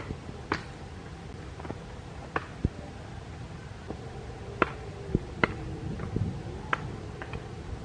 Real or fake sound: real